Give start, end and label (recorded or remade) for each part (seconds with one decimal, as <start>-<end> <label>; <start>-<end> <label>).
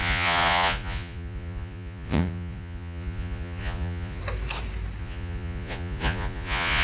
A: 0.0-4.2 remade; 4.2-5.0 recorded; 5.0-6.8 remade